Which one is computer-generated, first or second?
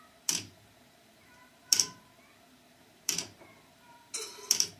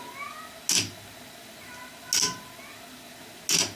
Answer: first